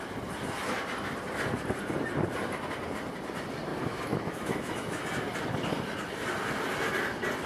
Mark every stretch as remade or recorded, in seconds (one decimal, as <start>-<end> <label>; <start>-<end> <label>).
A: 0.0-3.7 recorded; 3.7-5.0 remade; 5.0-7.5 recorded